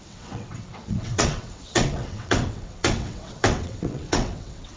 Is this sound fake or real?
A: fake